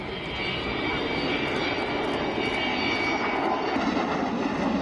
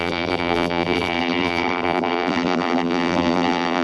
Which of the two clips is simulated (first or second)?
second